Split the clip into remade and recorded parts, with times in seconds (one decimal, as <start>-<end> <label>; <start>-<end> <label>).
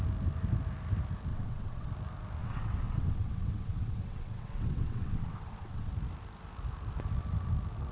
0.0-1.3 recorded; 1.3-1.9 remade; 1.9-2.4 recorded; 2.4-5.9 remade; 5.9-7.9 recorded